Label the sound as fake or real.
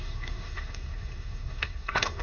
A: fake